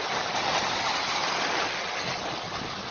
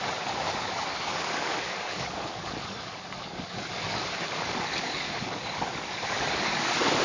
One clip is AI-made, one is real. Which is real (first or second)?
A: first